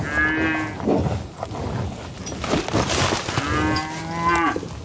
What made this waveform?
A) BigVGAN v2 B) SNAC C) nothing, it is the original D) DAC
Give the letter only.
C